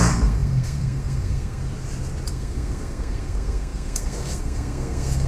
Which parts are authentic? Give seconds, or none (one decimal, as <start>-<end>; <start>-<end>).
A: 1.6-2.3